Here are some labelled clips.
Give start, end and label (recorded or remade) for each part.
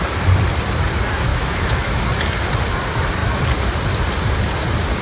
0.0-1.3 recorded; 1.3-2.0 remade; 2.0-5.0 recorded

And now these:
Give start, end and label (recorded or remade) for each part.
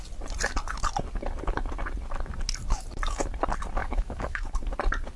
0.0-3.8 recorded; 3.8-4.5 remade; 4.5-5.2 recorded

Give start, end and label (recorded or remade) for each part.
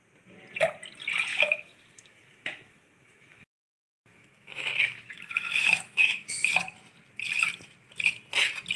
0.0-1.3 recorded; 1.3-6.5 remade; 6.5-8.8 recorded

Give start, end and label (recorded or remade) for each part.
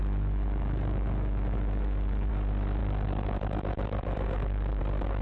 0.0-2.3 remade; 2.3-2.8 recorded; 2.8-4.8 remade; 4.8-5.2 recorded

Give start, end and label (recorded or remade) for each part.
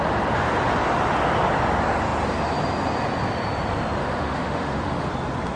0.0-4.0 recorded; 4.0-5.1 remade; 5.1-5.6 recorded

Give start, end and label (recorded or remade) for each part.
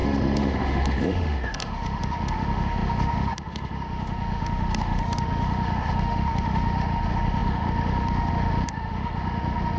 0.0-9.8 remade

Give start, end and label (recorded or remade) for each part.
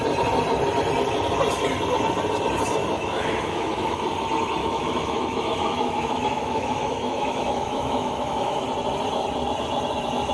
0.0-2.8 recorded; 2.8-4.0 remade; 4.0-4.6 recorded; 4.6-8.6 remade; 8.6-10.3 recorded